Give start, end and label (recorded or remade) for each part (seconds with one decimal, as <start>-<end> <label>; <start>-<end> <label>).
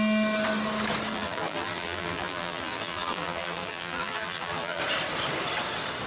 0.0-1.1 recorded; 1.1-4.8 remade; 4.8-6.1 recorded